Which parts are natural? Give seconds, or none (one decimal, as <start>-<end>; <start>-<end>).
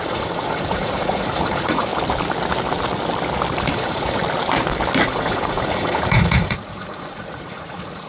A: 1.9-3.7; 4.2-5.1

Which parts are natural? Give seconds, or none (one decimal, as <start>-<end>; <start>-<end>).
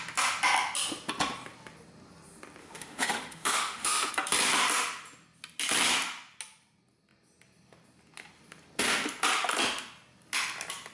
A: 0.0-2.6; 4.1-10.9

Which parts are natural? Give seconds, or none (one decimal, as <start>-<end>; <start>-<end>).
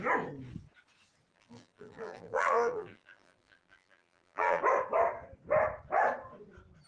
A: 0.0-1.3; 4.6-6.9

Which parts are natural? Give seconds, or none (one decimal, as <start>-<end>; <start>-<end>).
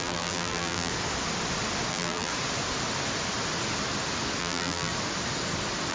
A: 0.9-1.9; 2.3-4.4; 4.9-5.9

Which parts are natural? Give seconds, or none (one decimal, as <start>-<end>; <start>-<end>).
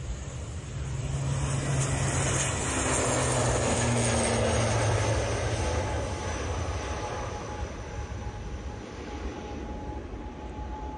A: 0.0-11.0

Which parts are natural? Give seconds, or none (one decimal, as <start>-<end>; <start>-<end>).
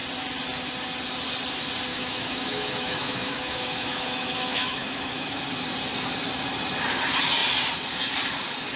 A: 0.0-1.9; 5.4-8.8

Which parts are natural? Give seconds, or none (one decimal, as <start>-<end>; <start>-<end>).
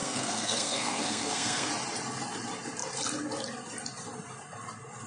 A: 1.7-5.1